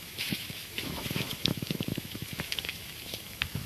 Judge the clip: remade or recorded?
remade